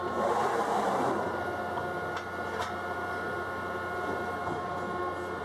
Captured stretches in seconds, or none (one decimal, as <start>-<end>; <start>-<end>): 0.0-5.4